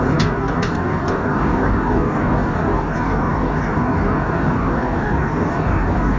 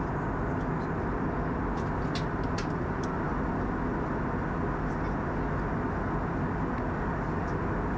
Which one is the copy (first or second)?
first